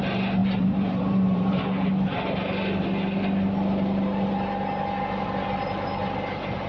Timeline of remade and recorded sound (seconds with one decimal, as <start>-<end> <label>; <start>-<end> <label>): 0.0-0.4 recorded; 0.4-1.6 remade; 1.6-6.7 recorded